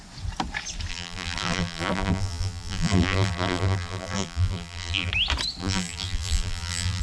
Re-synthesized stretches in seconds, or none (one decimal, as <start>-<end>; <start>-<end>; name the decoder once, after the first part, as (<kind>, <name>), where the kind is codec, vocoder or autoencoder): 0.9-5.1 (vocoder, BigVGAN v2); 5.6-7.0